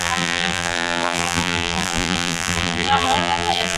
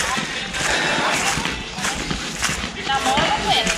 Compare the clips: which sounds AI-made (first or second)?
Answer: first